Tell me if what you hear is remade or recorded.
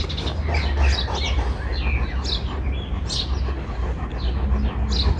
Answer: recorded